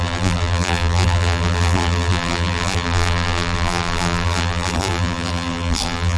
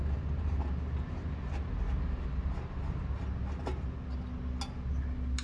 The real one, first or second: second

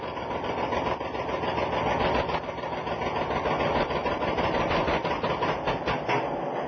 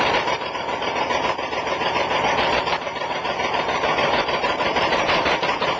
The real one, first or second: first